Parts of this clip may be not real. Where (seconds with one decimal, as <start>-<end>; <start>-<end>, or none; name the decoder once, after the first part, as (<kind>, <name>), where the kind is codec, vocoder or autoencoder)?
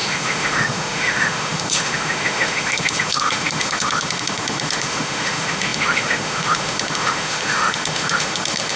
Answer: 0.0-8.8 (autoencoder, DAC-VAE)